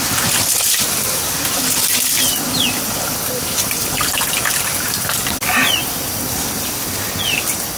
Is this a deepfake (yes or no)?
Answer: no